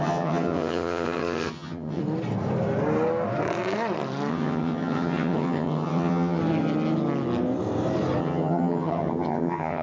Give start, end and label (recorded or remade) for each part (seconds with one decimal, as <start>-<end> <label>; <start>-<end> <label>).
0.0-2.0 remade; 2.0-4.3 recorded; 4.3-6.4 remade; 6.4-8.2 recorded; 8.2-9.8 remade